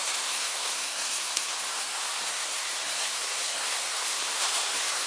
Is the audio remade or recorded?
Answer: remade